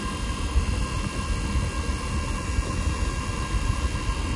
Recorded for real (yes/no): yes